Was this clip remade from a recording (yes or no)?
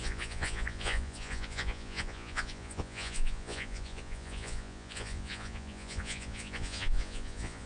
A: yes